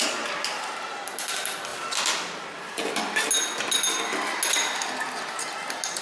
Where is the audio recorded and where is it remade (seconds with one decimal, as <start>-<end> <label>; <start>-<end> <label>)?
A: 0.0-6.0 recorded